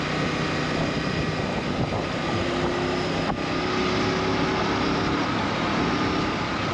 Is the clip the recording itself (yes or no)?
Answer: yes